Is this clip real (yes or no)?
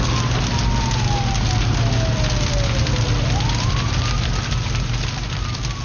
yes